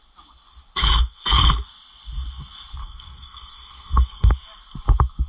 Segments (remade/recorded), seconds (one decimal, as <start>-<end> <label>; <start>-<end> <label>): 0.0-0.8 recorded; 0.8-1.4 remade; 1.4-2.8 recorded; 2.8-4.3 remade; 4.3-5.3 recorded